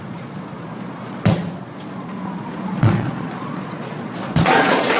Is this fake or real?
fake